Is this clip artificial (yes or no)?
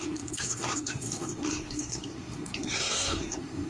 yes